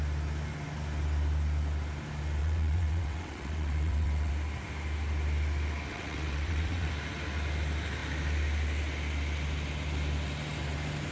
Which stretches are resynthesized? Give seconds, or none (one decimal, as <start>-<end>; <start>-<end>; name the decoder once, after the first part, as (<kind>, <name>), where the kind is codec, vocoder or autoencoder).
2.4-4.3 (vocoder, WaveNeXt); 5.9-6.9